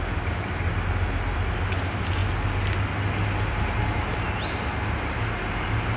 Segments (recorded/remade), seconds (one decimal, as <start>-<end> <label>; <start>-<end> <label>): 0.0-6.0 recorded